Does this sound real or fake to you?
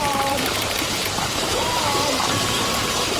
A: fake